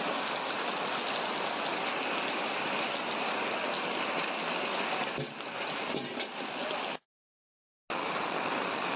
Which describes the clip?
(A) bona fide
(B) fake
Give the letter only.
A